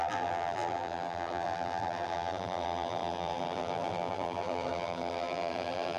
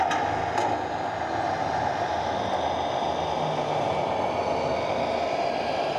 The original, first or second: second